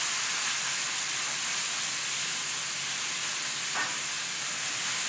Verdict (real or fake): real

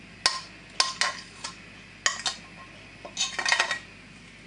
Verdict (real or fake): real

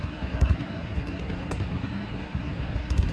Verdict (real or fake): fake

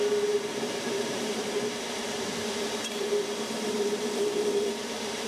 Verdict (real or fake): fake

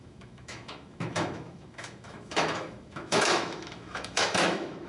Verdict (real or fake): fake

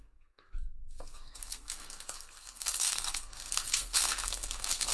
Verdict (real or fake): fake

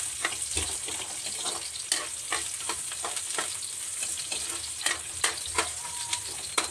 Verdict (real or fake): real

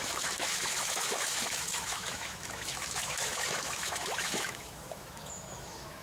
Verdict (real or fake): fake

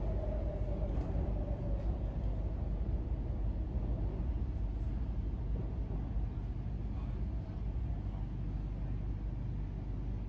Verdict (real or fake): real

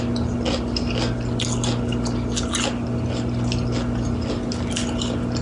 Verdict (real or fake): real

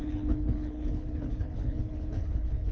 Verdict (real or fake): fake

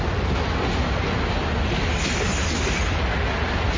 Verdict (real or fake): real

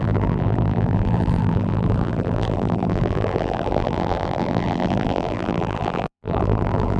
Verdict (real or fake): fake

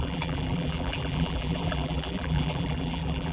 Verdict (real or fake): fake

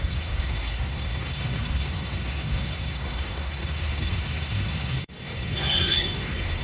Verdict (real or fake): fake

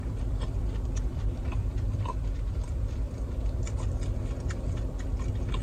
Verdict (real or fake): fake